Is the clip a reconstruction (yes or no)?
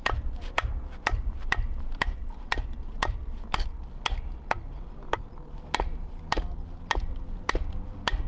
no